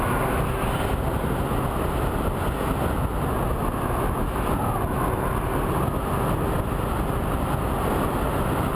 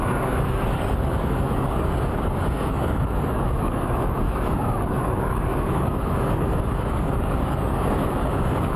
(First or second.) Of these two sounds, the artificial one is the second